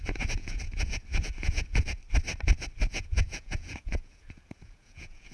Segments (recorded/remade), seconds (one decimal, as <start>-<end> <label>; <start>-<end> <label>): 0.0-2.0 remade; 2.0-2.9 recorded; 2.9-5.3 remade

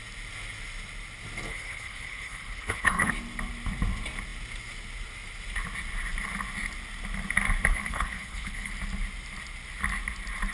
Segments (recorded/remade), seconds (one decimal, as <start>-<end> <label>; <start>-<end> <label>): 0.0-1.5 recorded; 1.5-3.1 remade; 3.1-7.7 recorded; 7.7-8.7 remade; 8.7-10.5 recorded

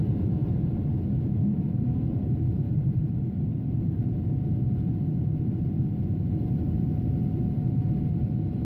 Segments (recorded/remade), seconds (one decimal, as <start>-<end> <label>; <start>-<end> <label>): 0.0-0.4 remade; 0.4-2.4 recorded; 2.4-8.6 remade

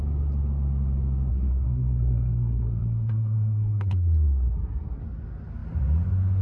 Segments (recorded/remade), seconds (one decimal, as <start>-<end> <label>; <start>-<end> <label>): 0.0-1.3 recorded; 1.3-5.0 remade; 5.0-6.4 recorded

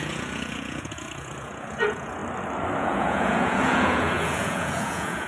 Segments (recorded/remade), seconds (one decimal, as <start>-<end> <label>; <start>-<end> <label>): 0.0-2.2 remade; 2.2-2.8 recorded; 2.8-5.3 remade